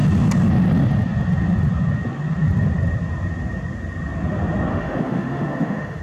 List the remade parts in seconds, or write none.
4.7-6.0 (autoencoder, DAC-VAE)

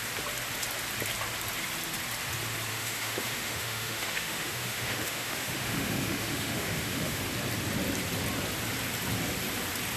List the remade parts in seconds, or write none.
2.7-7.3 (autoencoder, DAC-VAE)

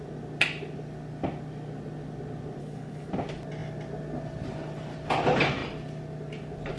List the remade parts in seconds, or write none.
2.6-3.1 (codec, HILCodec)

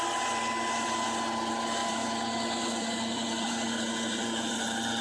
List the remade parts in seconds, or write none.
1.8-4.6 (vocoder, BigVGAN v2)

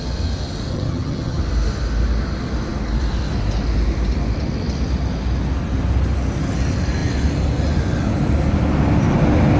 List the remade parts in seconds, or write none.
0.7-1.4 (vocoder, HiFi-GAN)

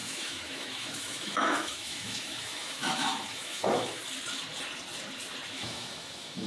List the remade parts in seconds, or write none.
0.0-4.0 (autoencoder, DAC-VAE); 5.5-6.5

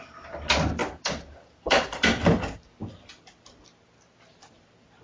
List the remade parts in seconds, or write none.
0.8-2.9 (vocoder, BigVGAN v2)

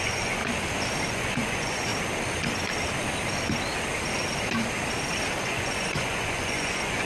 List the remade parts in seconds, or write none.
0.0-0.4 (vocoder, Vocos); 1.1-1.9; 5.4-7.0